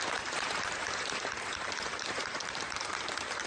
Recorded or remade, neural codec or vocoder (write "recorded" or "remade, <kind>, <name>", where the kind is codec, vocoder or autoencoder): remade, vocoder, BigVGAN v2